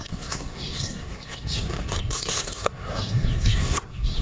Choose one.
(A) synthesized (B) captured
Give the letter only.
A